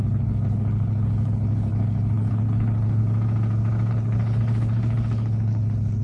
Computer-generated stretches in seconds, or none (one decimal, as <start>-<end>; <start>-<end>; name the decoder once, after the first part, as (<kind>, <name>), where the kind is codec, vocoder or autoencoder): 0.0-3.0 (codec, HILCodec); 3.9-6.0